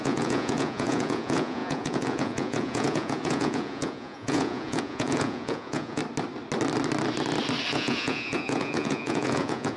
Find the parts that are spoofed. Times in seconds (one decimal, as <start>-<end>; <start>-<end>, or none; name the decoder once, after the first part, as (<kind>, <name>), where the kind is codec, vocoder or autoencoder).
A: 0.0-6.0 (vocoder, Vocos); 7.7-9.8

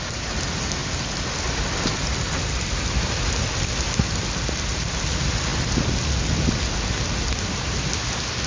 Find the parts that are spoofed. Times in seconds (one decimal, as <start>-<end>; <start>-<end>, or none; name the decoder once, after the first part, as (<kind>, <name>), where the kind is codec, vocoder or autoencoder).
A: none